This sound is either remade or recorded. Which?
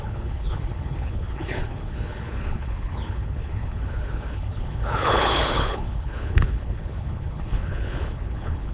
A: remade